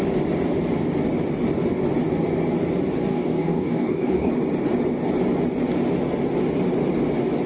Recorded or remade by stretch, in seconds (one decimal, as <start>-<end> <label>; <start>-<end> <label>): 0.0-3.1 recorded; 3.1-4.3 remade; 4.3-7.5 recorded